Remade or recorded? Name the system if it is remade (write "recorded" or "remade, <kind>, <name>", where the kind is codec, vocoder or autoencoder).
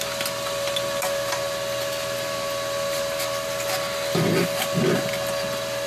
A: recorded